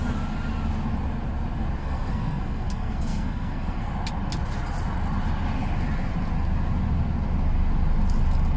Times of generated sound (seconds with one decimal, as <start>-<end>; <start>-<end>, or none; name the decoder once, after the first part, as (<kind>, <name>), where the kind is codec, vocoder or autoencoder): 1.8-3.9 (codec, SNAC)